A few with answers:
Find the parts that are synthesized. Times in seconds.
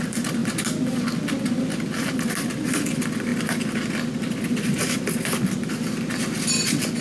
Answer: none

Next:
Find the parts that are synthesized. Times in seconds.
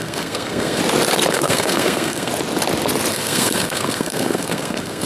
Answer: 0.0-0.8 (codec, SNAC); 1.3-2.3; 3.1-5.1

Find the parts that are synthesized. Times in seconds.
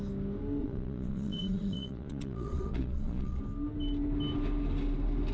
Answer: 0.6-3.4 (vocoder, Vocos)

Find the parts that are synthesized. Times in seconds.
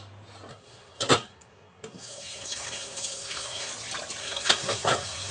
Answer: 0.5-3.7 (codec, SNAC); 4.2-5.3